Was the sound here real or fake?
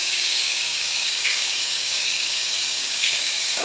fake